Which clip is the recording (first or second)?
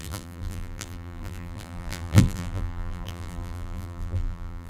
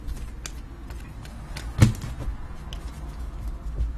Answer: second